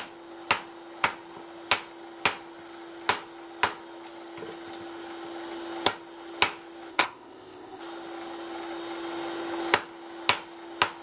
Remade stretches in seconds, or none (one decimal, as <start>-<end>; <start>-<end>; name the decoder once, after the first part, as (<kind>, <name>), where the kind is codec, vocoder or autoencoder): 6.9-7.8 (codec, ZipCodec)